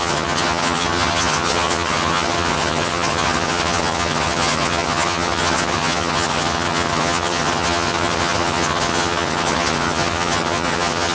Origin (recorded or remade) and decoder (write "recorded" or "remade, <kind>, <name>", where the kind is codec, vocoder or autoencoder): remade, vocoder, HiFi-GAN